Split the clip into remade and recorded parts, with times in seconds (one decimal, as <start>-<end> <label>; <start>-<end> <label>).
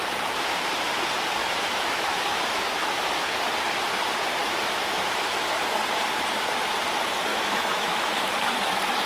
0.0-1.4 recorded; 1.4-3.3 remade; 3.3-4.4 recorded; 4.4-5.6 remade; 5.6-7.3 recorded; 7.3-8.0 remade; 8.0-9.1 recorded